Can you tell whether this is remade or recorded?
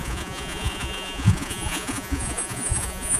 remade